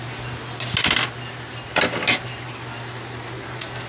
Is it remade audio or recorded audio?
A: recorded